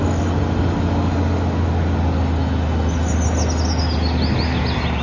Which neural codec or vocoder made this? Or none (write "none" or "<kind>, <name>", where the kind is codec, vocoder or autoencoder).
none